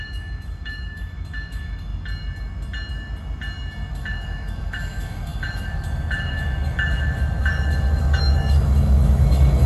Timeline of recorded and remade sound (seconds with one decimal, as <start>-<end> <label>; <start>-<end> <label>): 0.0-1.9 remade; 1.9-3.9 recorded; 3.9-9.7 remade